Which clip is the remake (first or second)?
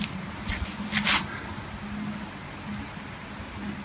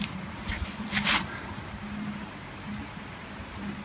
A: second